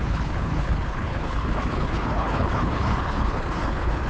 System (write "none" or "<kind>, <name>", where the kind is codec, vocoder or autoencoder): codec, HILCodec